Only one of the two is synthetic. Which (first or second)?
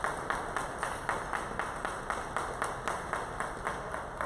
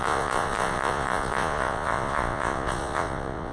second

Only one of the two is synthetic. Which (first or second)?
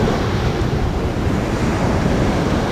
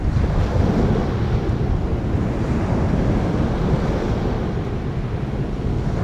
first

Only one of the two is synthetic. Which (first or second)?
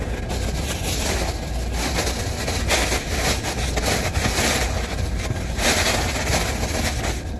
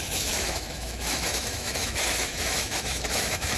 second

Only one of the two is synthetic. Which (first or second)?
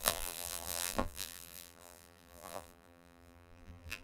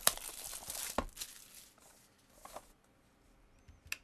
first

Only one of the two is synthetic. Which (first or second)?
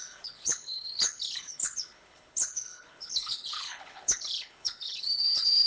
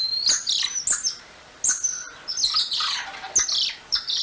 first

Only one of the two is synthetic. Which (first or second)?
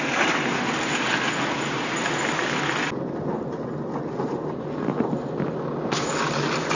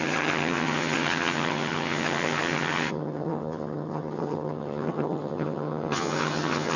second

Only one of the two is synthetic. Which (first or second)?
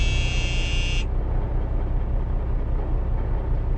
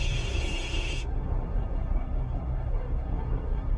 second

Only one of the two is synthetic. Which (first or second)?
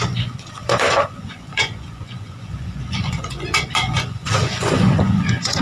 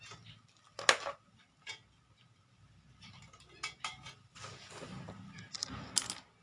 first